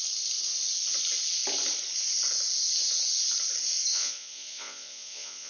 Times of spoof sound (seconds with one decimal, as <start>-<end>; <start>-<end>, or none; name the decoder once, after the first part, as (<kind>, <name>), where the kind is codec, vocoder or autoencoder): 3.9-5.5 (vocoder, Vocos)